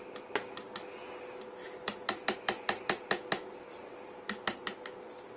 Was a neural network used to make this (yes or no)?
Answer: no